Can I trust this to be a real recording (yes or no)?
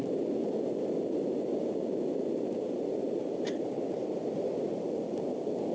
no